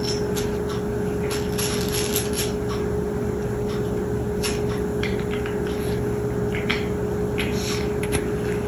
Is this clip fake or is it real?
real